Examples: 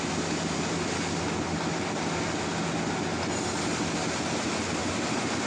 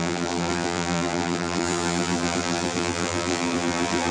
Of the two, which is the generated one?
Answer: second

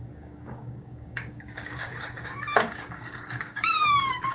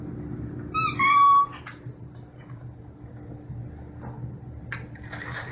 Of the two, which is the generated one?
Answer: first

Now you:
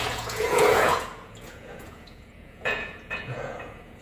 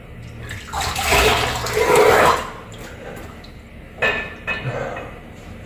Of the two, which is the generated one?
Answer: first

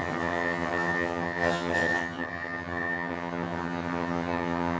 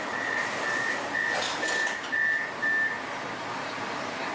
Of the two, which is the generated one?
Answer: first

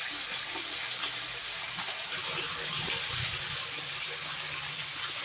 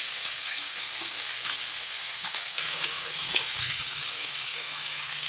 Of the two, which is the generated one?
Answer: second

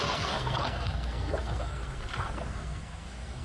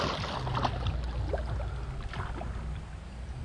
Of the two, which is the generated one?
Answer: first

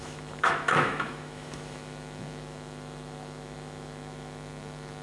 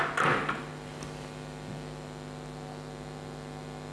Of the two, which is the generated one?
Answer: first